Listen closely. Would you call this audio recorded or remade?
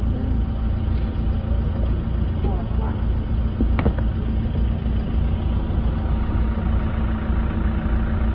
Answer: recorded